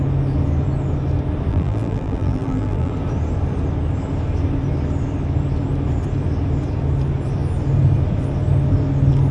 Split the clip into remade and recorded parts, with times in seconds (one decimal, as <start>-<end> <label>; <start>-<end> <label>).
0.0-1.5 recorded; 1.5-2.9 remade; 2.9-9.3 recorded